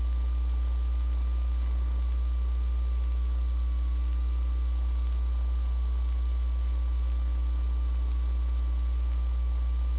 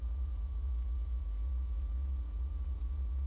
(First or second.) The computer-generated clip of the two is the second